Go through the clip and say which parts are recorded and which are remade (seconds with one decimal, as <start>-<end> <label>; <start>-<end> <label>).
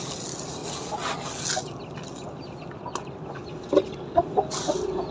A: 0.0-5.1 recorded